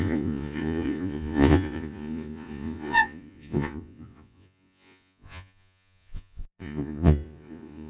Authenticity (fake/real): fake